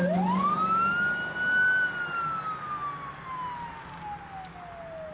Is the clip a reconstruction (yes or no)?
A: no